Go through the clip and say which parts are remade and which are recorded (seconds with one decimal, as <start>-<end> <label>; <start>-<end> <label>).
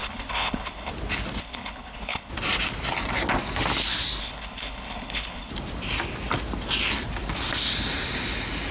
0.0-0.9 remade; 0.9-1.4 recorded; 1.4-2.3 remade; 2.3-4.2 recorded; 4.2-5.5 remade; 5.5-8.7 recorded